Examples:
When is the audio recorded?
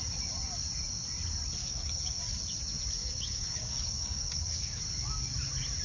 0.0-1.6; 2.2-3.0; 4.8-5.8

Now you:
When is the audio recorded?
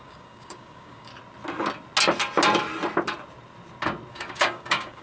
1.1-4.1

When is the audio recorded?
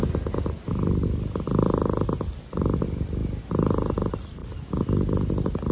0.0-5.7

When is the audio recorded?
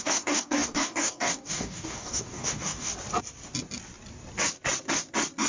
2.9-5.5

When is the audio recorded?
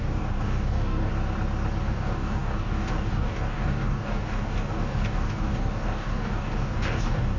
1.1-1.8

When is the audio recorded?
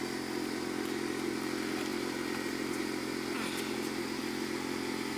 0.0-5.2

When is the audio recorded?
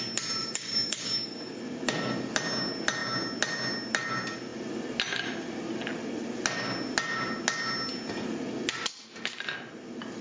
0.0-0.4; 1.6-10.2